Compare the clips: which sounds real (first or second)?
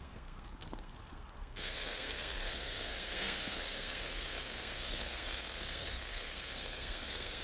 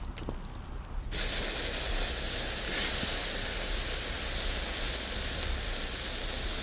second